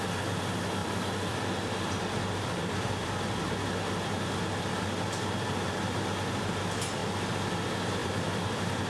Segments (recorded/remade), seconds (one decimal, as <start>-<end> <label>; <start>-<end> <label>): 0.0-0.8 recorded; 0.8-3.1 remade; 3.1-8.0 recorded; 8.0-8.9 remade